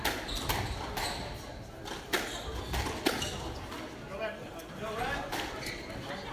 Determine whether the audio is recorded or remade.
recorded